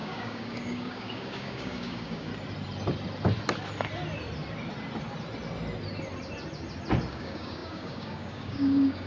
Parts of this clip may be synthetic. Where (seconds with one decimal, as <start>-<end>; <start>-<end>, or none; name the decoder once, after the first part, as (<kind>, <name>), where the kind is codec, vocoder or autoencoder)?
0.0-2.3 (codec, DAC); 7.1-9.1